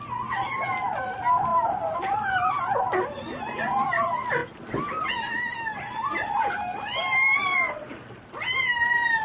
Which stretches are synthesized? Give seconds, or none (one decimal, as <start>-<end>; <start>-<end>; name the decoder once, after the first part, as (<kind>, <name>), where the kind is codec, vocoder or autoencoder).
none